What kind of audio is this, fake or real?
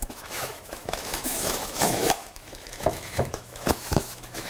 fake